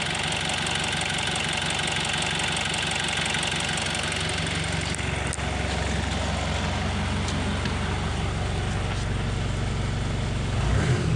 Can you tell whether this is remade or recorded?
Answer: recorded